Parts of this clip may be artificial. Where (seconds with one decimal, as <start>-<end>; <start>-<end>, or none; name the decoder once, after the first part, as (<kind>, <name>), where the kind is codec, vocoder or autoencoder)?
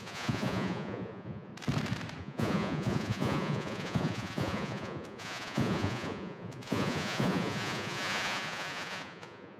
0.0-1.5 (vocoder, Vocos); 2.2-9.6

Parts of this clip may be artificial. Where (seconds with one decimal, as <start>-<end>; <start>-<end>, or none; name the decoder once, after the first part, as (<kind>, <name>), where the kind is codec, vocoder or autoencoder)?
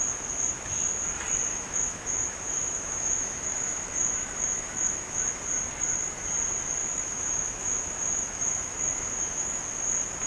1.5-5.4 (autoencoder, DAC-VAE); 6.8-9.6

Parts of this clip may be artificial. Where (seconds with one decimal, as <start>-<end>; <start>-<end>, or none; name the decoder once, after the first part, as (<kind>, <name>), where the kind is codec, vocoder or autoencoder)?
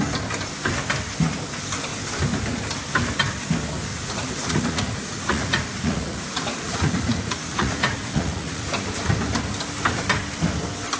3.9-8.7 (vocoder, Vocos)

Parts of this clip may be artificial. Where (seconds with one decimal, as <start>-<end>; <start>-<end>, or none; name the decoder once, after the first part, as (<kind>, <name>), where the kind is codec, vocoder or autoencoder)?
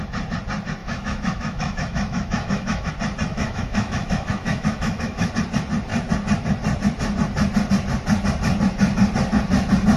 0.8-2.9 (autoencoder, DAC-VAE); 3.3-5.3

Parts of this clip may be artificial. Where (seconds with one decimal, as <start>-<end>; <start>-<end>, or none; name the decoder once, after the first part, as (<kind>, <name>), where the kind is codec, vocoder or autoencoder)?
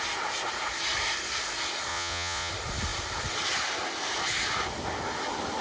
1.9-2.5 (vocoder, Vocos)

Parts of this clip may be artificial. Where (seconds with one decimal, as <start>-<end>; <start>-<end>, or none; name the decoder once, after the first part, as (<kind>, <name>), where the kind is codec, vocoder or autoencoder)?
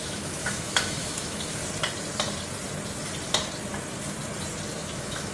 0.0-1.6 (autoencoder, DAC-VAE); 4.8-5.3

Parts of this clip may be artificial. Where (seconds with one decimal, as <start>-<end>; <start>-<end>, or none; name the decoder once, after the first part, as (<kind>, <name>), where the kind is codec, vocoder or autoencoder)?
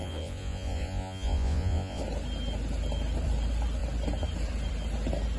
0.0-2.0 (vocoder, Vocos)